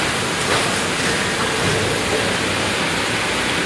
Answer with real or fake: real